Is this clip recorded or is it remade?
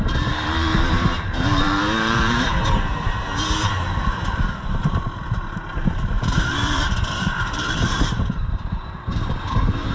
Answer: remade